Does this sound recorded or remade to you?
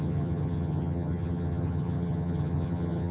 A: remade